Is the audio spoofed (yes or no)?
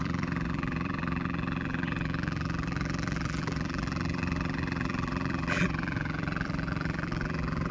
yes